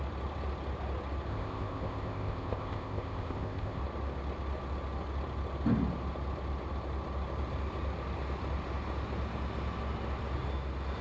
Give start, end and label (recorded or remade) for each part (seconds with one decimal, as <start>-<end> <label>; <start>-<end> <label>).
0.0-1.3 recorded; 1.3-3.8 remade; 3.8-11.0 recorded